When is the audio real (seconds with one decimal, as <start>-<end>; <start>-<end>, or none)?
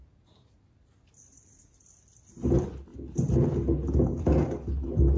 0.0-5.2